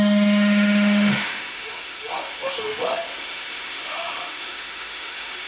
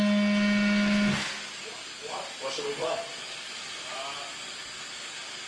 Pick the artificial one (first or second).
first